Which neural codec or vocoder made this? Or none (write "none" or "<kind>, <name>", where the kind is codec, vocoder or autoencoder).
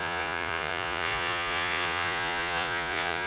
vocoder, Vocos